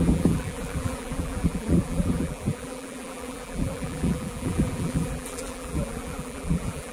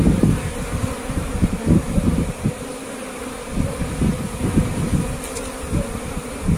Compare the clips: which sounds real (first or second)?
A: second